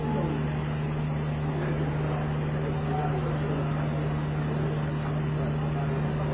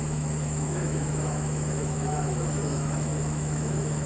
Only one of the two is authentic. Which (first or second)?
first